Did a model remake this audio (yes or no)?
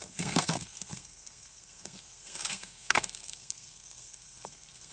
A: yes